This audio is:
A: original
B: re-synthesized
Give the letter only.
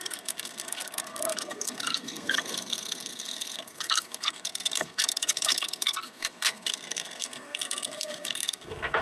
B